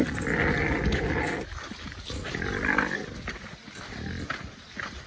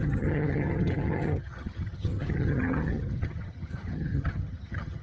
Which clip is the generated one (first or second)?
second